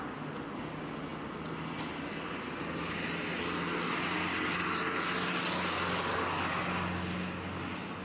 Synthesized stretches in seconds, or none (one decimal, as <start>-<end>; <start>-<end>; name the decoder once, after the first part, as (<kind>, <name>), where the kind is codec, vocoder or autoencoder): none

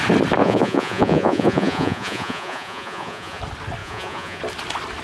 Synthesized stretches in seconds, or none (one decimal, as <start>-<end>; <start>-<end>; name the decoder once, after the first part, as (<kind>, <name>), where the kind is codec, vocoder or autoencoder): 0.4-3.4 (vocoder, Vocos); 3.8-4.4

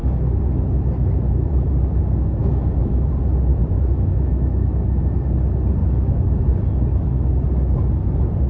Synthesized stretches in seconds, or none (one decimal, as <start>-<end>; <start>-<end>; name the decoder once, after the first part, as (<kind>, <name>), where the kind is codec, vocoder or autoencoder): 2.4-3.1 (autoencoder, DAC-VAE); 3.5-4.9; 5.8-6.4